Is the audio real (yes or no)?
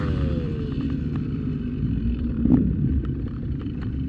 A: no